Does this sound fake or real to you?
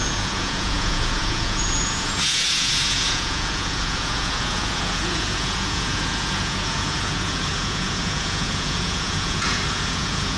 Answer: fake